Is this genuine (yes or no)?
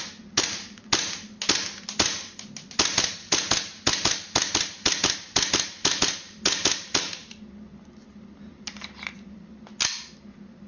yes